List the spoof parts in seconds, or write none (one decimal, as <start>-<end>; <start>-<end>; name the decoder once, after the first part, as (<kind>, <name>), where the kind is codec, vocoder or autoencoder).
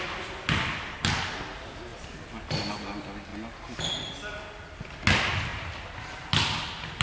none